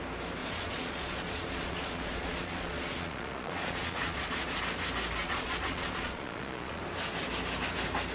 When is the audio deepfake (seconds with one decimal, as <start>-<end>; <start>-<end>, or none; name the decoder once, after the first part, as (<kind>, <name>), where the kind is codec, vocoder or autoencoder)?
0.4-4.6 (vocoder, Vocos); 5.2-6.8